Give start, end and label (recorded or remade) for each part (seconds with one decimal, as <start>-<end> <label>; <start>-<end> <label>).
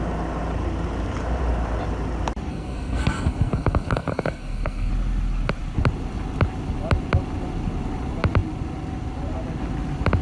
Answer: 0.0-2.5 recorded; 2.5-4.9 remade; 4.9-10.2 recorded